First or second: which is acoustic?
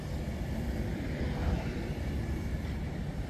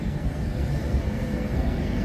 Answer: first